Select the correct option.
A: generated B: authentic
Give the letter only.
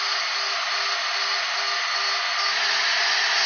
B